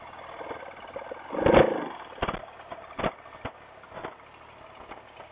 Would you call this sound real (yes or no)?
yes